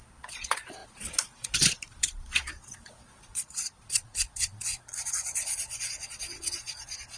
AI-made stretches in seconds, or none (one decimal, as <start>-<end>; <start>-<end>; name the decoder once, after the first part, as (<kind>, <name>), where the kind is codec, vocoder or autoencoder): 0.0-7.2 (vocoder, Vocos)